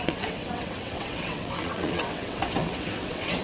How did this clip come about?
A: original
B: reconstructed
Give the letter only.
B